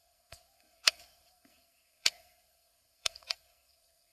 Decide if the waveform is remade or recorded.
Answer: remade